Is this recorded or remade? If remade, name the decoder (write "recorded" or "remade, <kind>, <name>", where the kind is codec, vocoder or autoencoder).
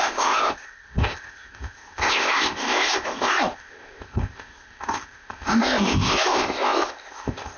remade, codec, ZipCodec